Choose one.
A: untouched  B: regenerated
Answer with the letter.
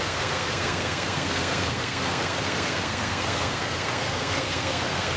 B